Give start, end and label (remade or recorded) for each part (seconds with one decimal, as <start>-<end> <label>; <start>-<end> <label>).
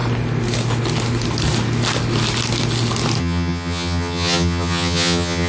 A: 0.0-3.2 recorded; 3.2-5.5 remade